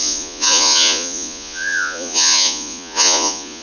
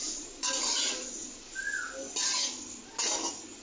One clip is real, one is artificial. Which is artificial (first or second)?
first